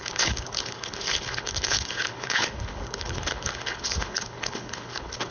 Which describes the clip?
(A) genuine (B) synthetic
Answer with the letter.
B